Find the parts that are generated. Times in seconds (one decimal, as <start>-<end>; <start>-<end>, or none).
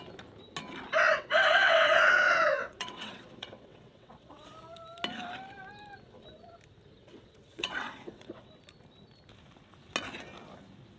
1.1-4.5; 7.0-8.5